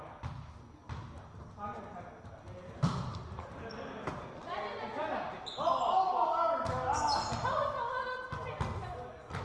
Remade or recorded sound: recorded